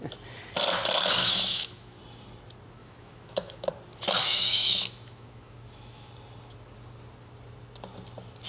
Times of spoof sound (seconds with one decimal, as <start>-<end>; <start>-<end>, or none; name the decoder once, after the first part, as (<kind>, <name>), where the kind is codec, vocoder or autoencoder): 1.2-2.0 (autoencoder, DAC-VAE); 2.8-3.7; 4.2-6.1